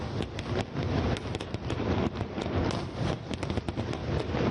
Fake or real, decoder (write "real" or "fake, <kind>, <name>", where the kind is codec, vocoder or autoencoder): real